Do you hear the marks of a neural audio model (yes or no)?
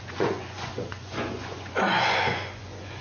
yes